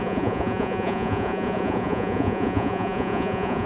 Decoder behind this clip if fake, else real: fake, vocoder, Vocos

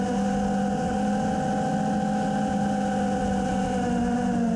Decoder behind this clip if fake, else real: real